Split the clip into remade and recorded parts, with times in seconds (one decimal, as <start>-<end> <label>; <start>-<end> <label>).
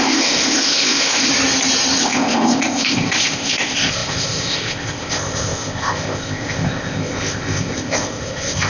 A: 0.0-1.3 remade; 1.3-2.0 recorded; 2.0-8.7 remade